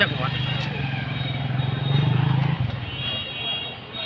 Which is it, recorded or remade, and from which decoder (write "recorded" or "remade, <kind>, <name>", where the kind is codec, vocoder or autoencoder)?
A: recorded